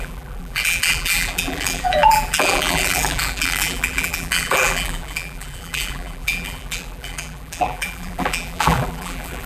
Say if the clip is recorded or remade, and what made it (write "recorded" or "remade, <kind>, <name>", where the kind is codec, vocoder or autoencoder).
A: remade, vocoder, BigVGAN v2